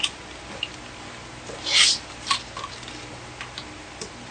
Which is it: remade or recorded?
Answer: recorded